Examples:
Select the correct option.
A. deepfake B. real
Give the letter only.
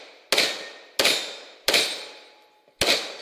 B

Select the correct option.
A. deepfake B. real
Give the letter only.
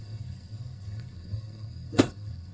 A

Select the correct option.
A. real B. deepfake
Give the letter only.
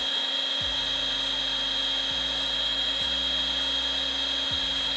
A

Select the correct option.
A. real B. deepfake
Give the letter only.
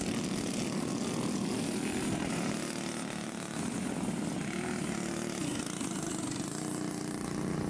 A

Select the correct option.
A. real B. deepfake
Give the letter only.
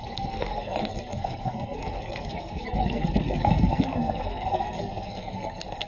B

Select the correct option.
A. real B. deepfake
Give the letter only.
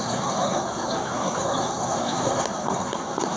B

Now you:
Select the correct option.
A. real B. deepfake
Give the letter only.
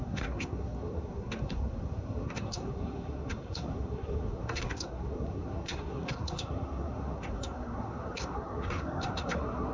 B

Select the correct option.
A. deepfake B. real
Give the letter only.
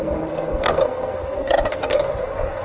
A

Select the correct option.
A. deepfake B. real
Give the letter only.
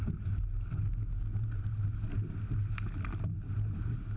B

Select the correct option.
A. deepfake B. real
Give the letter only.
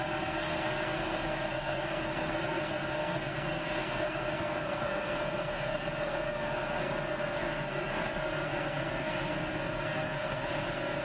A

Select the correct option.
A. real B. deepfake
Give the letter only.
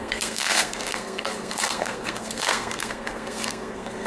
B